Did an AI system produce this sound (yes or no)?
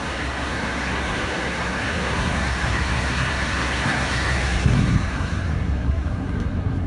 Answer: yes